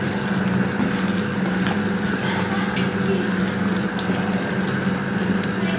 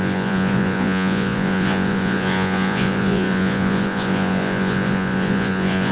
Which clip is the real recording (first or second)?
first